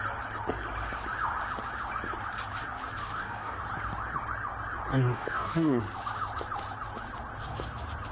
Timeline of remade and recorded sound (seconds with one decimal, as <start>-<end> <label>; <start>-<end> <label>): 0.0-3.0 recorded; 3.0-3.6 remade; 3.6-4.9 recorded; 4.9-5.8 remade; 5.8-8.1 recorded